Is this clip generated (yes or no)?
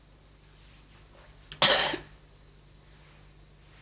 no